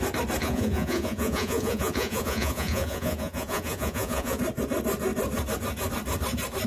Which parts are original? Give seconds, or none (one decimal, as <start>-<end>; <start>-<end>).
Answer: 0.0-0.4; 4.4-6.7